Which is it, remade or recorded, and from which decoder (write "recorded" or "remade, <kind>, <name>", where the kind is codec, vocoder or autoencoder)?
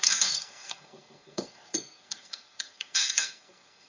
remade, codec, SNAC